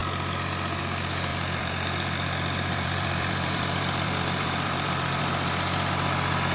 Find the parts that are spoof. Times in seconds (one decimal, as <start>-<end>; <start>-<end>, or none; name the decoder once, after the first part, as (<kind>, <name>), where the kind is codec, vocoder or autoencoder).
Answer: 1.3-5.2 (vocoder, BigVGAN v2)